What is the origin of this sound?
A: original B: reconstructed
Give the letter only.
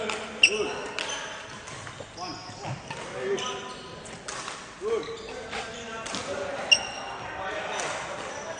A